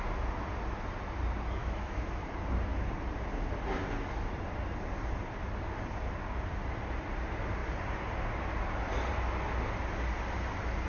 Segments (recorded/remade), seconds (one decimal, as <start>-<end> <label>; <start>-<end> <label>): 0.0-1.6 recorded; 1.6-2.3 remade; 2.3-10.9 recorded